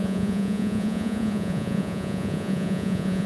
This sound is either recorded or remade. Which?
remade